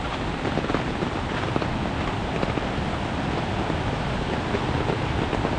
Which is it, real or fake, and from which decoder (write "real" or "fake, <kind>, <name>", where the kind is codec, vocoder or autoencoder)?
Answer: real